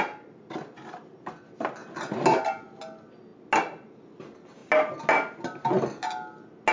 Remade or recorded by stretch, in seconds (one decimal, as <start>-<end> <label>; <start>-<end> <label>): 0.0-6.7 recorded